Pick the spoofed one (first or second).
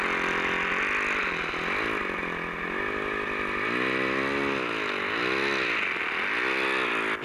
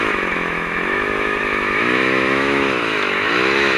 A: second